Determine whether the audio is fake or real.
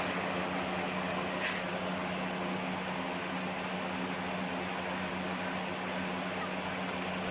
real